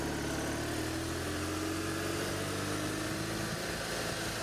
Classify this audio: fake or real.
real